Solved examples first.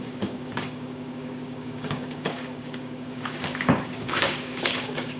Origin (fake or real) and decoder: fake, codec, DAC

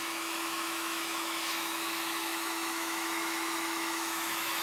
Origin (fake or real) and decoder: fake, autoencoder, DAC-VAE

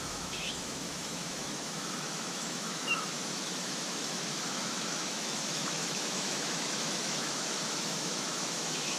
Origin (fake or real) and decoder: fake, autoencoder, DAC-VAE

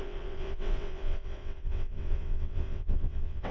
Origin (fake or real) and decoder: fake, vocoder, WaveNeXt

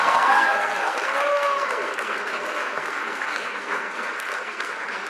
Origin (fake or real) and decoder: fake, codec, SNAC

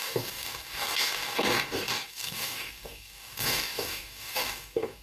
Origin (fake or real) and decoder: fake, codec, DAC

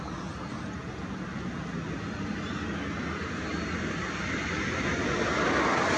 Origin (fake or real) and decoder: real